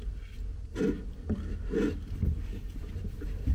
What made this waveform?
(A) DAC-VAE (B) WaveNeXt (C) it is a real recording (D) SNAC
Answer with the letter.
C